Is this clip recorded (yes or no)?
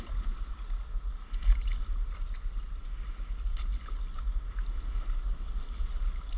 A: yes